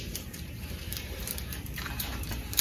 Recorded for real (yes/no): no